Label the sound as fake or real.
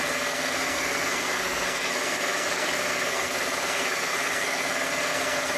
fake